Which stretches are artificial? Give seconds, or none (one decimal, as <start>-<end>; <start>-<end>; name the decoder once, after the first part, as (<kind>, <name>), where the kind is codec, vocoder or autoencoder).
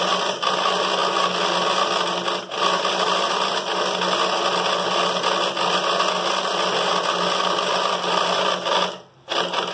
none